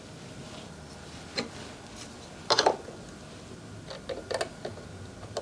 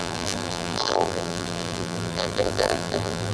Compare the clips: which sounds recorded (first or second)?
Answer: first